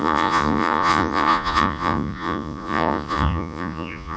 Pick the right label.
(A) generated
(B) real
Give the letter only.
A